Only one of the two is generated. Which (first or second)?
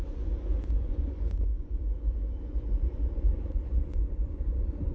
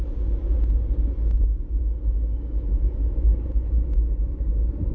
first